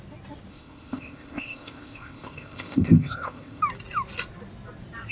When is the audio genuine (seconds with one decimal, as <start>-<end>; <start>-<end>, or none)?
0.0-0.5; 3.6-5.1